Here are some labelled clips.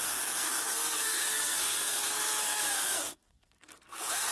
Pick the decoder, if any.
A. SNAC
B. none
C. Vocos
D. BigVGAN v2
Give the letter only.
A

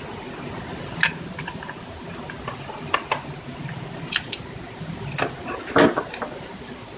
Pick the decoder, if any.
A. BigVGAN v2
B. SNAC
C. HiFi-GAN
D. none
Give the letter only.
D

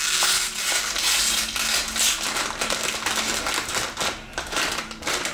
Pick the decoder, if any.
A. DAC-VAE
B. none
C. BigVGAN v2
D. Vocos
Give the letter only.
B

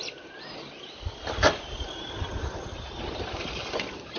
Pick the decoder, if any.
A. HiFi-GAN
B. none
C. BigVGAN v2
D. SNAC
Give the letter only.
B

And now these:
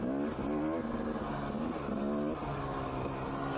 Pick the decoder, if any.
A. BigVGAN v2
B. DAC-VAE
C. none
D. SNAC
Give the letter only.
C